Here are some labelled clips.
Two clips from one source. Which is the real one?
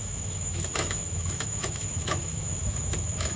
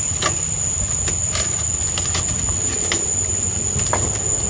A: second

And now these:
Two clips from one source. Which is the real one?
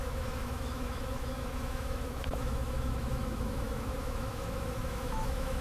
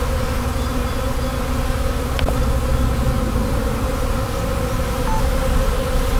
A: second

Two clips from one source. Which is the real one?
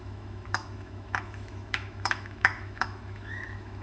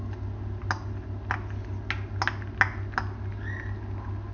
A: second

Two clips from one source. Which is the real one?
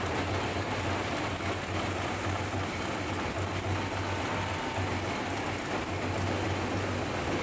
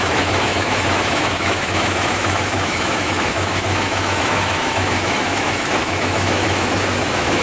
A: first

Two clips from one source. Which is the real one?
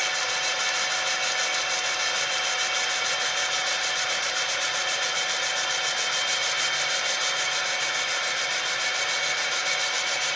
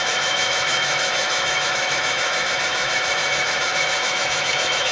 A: first